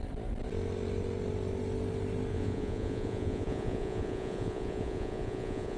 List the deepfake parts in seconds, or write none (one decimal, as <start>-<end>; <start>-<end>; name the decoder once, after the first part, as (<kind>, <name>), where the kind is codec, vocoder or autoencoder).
2.3-5.8 (vocoder, Vocos)